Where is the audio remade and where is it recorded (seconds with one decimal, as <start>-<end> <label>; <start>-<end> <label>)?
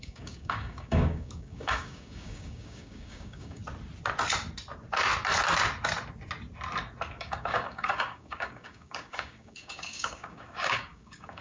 0.0-3.6 remade; 3.6-7.2 recorded; 7.2-11.4 remade